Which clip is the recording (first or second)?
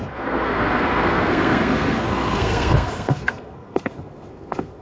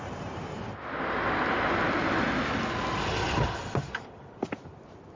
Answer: second